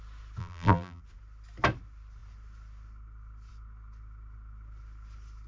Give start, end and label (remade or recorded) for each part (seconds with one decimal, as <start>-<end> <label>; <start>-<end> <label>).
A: 0.0-0.4 recorded; 0.4-1.0 remade; 1.0-5.5 recorded

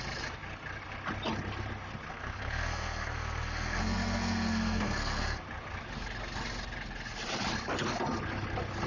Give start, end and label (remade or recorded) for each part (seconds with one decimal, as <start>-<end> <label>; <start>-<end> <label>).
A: 0.0-2.1 recorded; 2.1-5.4 remade; 5.4-8.9 recorded

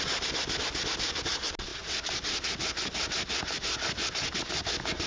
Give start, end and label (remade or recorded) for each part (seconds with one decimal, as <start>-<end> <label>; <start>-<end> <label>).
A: 0.0-5.1 recorded

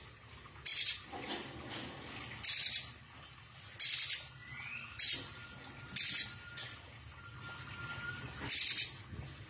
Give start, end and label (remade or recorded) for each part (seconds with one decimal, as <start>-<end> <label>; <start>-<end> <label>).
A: 0.0-9.5 recorded

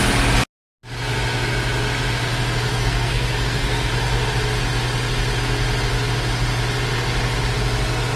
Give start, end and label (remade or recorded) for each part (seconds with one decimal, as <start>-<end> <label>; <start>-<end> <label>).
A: 0.0-2.7 recorded; 2.7-3.9 remade; 3.9-8.2 recorded

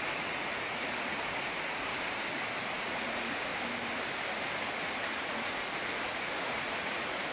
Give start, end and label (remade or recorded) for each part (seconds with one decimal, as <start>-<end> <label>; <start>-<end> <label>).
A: 0.0-1.9 remade; 1.9-2.8 recorded; 2.8-3.5 remade; 3.5-4.6 recorded; 4.6-7.3 remade

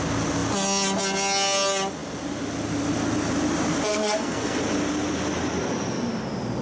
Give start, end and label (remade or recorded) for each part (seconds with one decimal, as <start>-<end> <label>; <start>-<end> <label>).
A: 0.0-3.9 recorded; 3.9-4.6 remade; 4.6-6.6 recorded